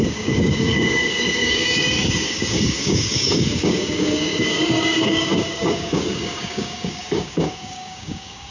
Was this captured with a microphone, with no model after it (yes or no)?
no